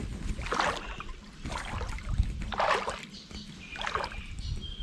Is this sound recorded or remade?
recorded